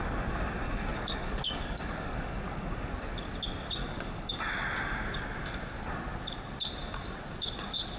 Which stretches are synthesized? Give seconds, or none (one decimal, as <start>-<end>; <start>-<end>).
0.9-2.9; 3.8-4.4